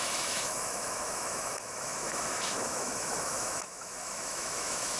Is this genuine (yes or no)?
no